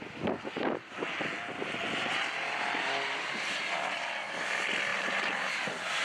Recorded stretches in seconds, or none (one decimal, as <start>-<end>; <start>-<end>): 0.0-4.9; 5.5-6.0